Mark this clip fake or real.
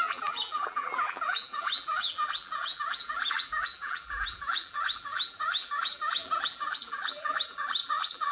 fake